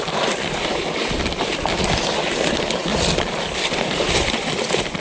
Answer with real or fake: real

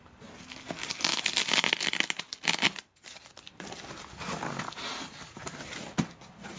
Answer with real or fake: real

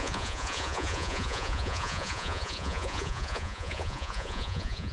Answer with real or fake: fake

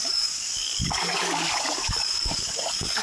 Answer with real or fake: fake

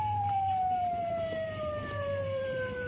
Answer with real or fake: fake